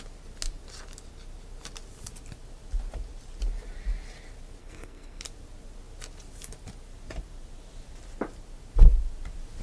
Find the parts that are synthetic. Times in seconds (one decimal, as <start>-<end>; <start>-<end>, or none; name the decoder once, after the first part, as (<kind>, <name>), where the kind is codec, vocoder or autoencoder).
4.6-5.2 (codec, SNAC)